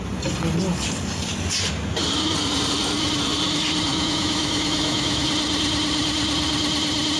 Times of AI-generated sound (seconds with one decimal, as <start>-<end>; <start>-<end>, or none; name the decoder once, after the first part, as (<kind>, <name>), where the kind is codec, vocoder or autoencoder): 3.9-5.3 (autoencoder, DAC-VAE)